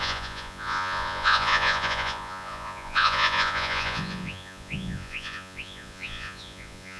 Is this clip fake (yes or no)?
yes